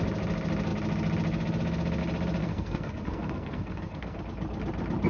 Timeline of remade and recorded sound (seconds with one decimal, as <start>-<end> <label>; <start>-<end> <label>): 0.0-2.4 recorded; 2.4-4.2 remade; 4.2-5.1 recorded